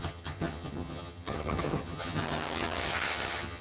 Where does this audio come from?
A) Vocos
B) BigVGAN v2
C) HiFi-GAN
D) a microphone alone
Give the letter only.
C